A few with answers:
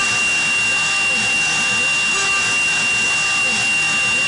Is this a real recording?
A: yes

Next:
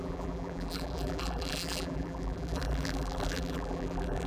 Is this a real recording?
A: no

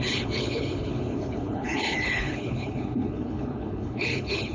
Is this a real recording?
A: no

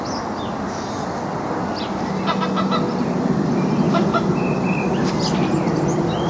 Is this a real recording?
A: yes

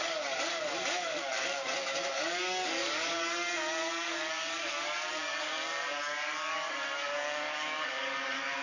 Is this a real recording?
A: no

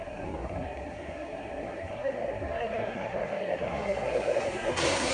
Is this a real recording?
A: no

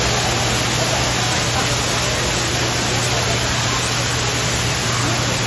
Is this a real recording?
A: yes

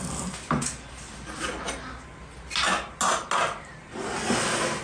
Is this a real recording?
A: yes